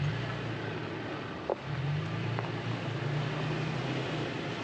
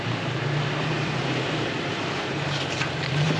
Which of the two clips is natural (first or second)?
first